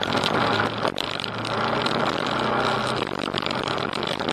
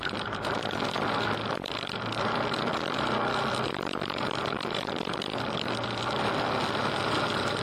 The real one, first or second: first